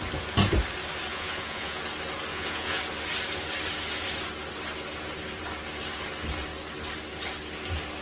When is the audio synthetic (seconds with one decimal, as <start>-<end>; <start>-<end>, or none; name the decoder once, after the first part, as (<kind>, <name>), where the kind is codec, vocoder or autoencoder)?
1.1-1.8 (vocoder, Vocos); 2.3-2.8